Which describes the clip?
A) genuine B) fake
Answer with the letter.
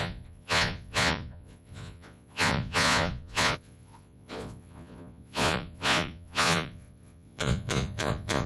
B